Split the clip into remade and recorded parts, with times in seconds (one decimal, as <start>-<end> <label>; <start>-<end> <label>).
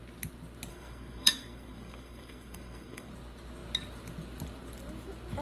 0.0-0.7 recorded; 0.7-3.1 remade; 3.1-5.4 recorded